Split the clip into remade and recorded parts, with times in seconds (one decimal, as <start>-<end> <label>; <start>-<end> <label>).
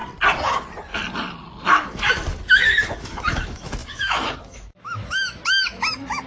0.0-1.6 recorded; 1.6-6.3 remade